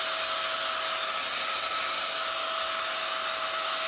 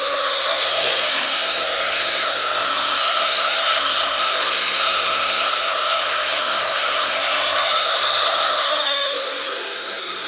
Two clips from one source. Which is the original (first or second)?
first